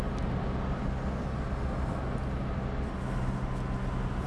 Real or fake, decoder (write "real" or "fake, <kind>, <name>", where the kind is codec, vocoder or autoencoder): real